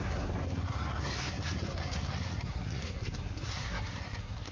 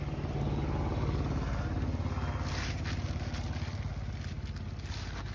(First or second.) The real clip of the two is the second